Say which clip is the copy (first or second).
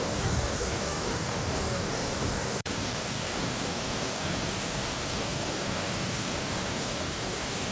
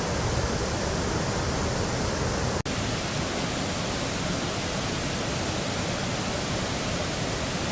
first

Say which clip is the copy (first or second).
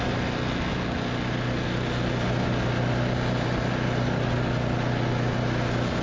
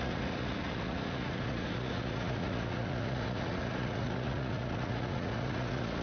second